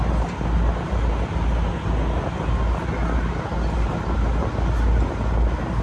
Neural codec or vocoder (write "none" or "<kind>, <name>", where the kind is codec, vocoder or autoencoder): none